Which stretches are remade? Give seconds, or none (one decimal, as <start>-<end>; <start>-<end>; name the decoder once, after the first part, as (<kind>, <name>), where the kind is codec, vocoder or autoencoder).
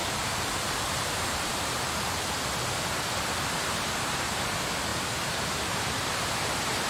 0.0-2.2 (vocoder, BigVGAN v2); 4.9-6.3